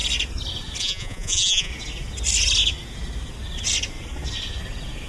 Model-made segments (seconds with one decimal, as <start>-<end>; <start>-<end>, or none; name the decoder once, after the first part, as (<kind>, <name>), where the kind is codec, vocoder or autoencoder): 0.8-1.7 (vocoder, Vocos)